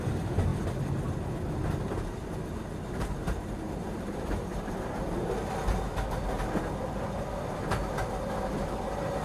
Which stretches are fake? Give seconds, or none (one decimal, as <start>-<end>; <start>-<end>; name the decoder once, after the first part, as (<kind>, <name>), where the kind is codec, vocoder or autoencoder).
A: 0.0-0.5 (vocoder, BigVGAN v2); 2.9-5.9; 7.9-9.2